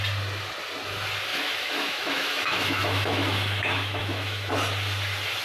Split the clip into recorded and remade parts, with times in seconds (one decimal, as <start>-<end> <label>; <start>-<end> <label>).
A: 0.0-1.3 recorded; 1.3-4.5 remade; 4.5-5.4 recorded